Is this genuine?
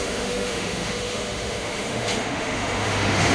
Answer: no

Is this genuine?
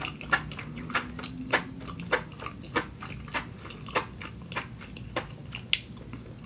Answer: yes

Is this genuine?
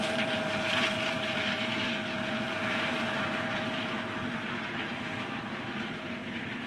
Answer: no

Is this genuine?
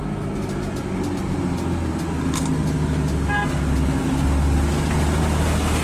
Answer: yes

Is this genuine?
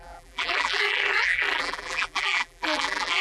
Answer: no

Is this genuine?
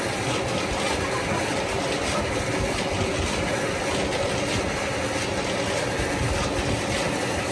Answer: yes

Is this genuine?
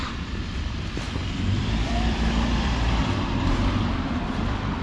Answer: no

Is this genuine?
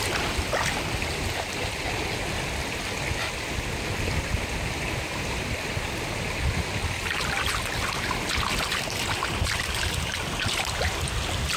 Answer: yes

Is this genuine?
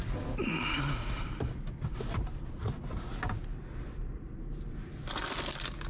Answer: yes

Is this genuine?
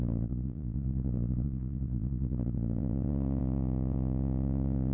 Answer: no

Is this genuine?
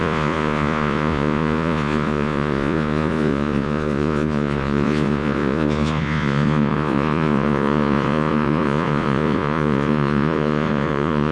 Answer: no